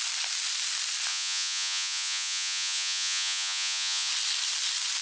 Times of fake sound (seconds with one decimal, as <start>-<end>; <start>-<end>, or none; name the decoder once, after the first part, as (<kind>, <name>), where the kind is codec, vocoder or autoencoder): 1.1-4.1 (vocoder, Vocos)